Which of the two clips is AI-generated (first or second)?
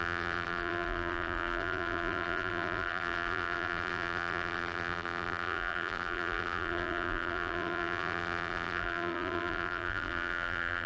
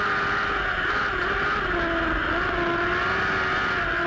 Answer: first